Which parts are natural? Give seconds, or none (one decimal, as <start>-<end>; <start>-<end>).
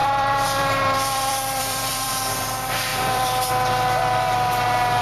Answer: 2.1-2.9; 3.5-5.0